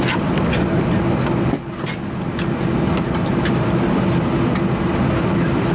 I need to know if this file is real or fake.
real